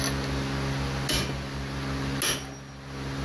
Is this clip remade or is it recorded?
recorded